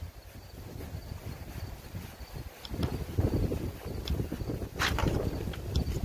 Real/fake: real